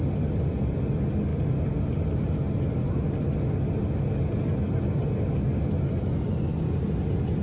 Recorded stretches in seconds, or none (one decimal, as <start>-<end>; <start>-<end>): 0.0-7.4